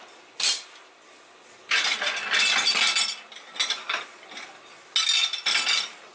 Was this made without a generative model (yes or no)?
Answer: yes